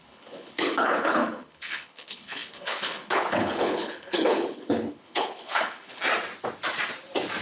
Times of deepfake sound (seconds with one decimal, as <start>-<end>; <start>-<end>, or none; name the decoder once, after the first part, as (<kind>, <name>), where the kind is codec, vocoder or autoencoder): 0.0-6.0 (codec, HILCodec)